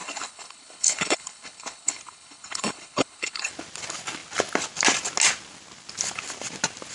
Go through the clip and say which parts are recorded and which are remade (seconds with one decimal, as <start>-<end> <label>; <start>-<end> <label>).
0.0-3.5 remade; 3.5-6.9 recorded